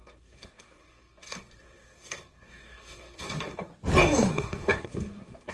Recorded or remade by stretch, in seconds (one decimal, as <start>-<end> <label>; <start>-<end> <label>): 0.0-3.7 remade; 3.7-4.3 recorded; 4.3-5.5 remade